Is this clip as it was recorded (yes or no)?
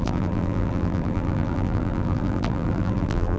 no